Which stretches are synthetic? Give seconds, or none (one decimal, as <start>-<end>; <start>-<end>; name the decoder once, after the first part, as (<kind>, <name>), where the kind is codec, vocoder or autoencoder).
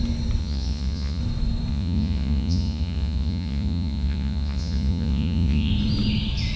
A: 0.4-1.2 (vocoder, Vocos); 1.7-5.7